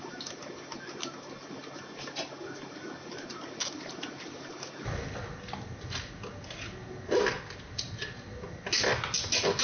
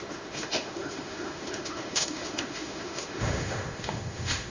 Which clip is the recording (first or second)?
first